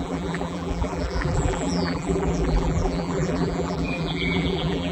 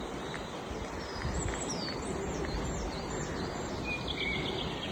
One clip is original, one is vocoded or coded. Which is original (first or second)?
second